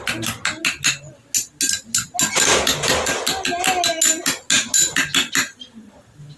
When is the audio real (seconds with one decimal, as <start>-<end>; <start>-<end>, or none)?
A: 0.0-6.4